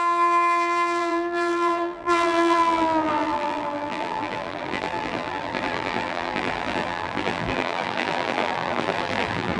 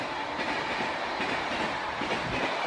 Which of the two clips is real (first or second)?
second